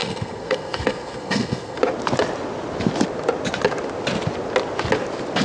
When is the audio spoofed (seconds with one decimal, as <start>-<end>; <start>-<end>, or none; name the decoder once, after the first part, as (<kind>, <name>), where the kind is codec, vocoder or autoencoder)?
0.0-1.8 (codec, SNAC)